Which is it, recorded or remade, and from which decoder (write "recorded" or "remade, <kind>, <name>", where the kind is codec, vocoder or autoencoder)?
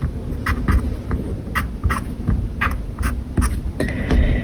recorded